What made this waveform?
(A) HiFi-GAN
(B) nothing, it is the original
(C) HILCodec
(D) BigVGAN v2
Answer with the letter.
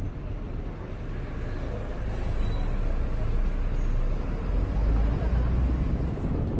B